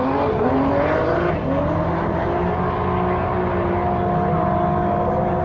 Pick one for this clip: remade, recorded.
recorded